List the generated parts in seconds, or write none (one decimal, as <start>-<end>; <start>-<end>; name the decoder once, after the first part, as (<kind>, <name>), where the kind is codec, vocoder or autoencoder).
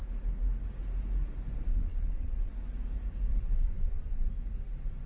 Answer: 1.7-2.5 (vocoder, Vocos); 3.3-4.0